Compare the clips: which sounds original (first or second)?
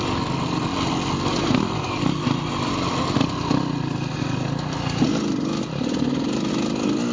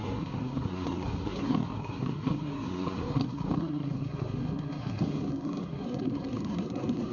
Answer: first